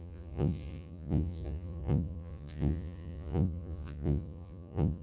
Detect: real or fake fake